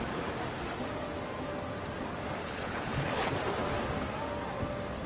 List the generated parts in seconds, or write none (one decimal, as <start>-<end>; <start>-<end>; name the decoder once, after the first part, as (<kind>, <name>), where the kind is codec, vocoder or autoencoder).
2.4-3.3 (codec, HILCodec)